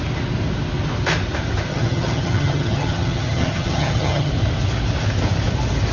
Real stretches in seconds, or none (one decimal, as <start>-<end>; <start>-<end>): 0.0-1.7; 4.3-5.9